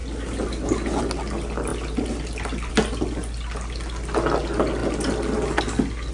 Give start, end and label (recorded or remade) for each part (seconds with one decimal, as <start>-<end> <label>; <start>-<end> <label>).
0.0-6.1 recorded